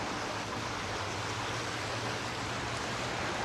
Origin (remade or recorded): recorded